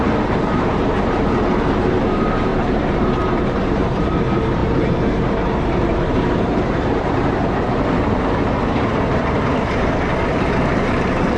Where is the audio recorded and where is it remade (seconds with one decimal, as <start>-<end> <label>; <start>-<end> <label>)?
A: 0.0-11.4 remade